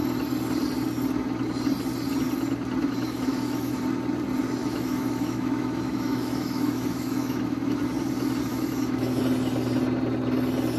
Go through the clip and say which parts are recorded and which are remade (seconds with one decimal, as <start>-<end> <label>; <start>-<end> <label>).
0.0-2.8 recorded; 2.8-3.8 remade; 3.8-4.6 recorded; 4.6-7.8 remade; 7.8-8.5 recorded; 8.5-9.2 remade; 9.2-10.8 recorded